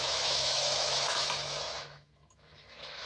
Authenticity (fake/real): fake